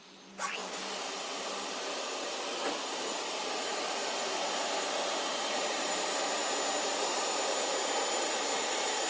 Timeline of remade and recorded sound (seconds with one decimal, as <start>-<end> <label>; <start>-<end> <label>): 0.0-4.4 remade; 4.4-5.2 recorded; 5.2-6.4 remade; 6.4-8.1 recorded; 8.1-9.1 remade